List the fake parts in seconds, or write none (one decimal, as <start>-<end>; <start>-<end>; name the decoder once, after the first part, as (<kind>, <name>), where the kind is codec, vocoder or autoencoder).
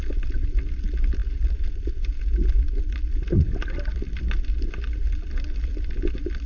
none